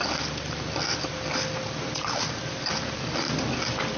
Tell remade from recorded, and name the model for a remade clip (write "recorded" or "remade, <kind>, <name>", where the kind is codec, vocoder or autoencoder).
remade, vocoder, BigVGAN v2